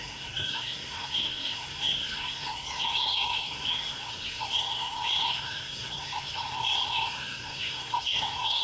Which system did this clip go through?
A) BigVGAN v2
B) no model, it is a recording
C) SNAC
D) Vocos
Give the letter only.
C